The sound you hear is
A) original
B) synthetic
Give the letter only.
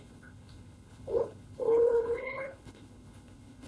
B